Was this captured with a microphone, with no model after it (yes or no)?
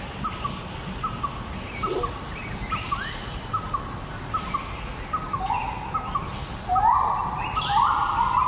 yes